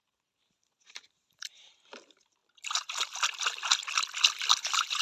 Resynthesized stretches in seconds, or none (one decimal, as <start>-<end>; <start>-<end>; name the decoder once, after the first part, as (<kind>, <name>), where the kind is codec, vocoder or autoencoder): 0.0-3.8 (vocoder, BigVGAN v2); 4.6-5.0